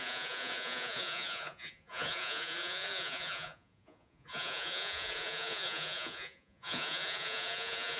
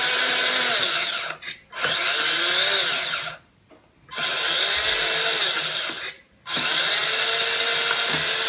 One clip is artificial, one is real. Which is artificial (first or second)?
first